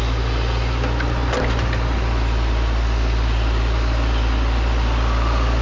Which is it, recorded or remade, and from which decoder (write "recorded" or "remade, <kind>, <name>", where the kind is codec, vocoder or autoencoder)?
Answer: recorded